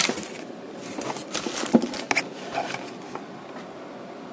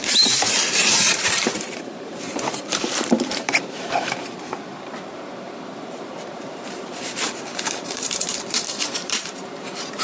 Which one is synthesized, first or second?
second